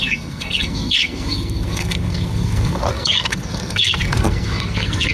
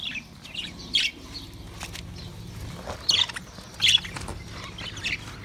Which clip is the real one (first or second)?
second